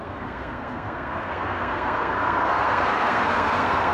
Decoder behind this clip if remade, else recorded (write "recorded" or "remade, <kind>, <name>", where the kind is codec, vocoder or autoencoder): remade, codec, SNAC